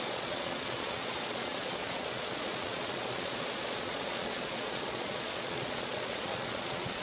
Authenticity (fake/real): fake